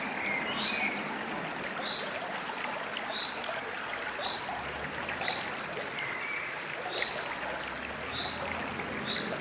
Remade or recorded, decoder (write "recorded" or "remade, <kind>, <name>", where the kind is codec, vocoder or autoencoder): recorded